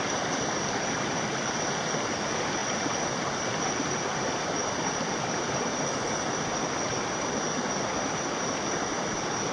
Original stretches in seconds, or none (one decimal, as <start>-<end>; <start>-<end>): 0.0-4.6; 5.7-9.5